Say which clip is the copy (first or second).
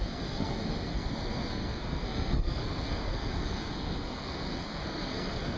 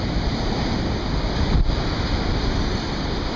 first